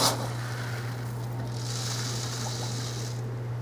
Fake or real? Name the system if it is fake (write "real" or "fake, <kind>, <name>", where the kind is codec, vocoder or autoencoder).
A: real